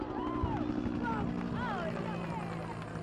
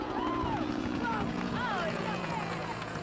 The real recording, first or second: first